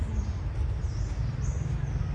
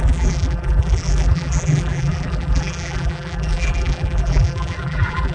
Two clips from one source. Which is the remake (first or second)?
second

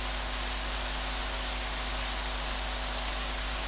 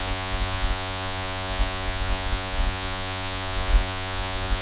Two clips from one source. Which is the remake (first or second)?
second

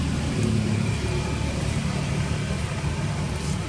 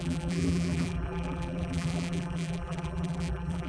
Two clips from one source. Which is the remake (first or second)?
second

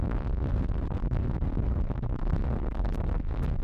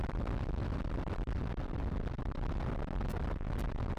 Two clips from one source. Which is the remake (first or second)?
first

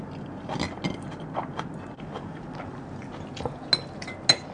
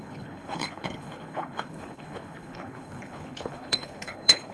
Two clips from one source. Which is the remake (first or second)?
second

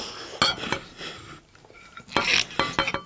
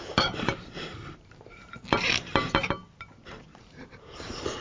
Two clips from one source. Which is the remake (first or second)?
second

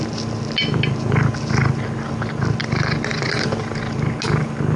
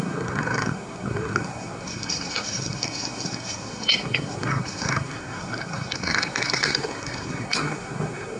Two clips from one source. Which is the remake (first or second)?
second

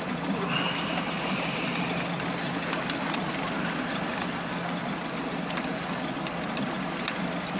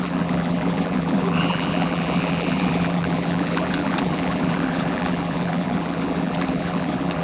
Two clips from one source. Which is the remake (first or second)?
second